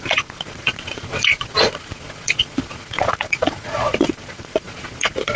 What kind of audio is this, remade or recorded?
remade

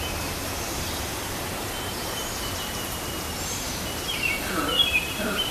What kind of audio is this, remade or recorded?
remade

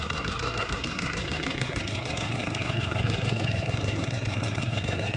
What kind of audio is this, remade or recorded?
remade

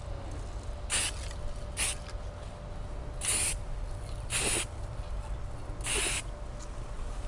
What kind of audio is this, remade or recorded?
recorded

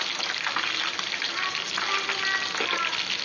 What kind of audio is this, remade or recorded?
recorded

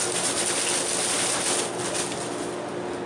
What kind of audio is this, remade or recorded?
recorded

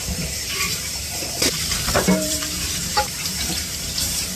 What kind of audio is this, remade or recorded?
remade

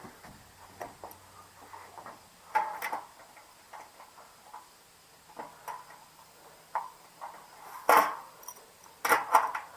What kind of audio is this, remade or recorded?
recorded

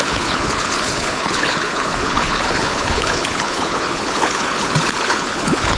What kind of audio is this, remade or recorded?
remade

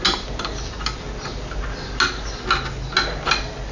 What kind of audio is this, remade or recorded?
recorded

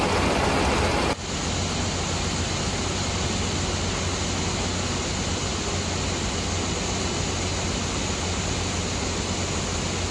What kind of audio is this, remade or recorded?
recorded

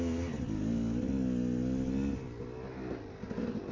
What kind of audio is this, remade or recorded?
recorded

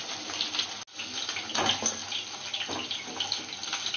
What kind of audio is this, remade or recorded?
recorded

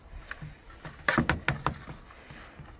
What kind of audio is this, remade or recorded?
recorded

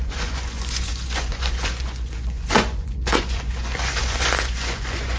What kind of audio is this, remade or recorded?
remade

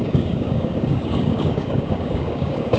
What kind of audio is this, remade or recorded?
remade